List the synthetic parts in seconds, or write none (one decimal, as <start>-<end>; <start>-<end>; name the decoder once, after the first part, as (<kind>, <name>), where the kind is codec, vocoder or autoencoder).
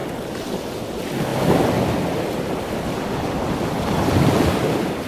none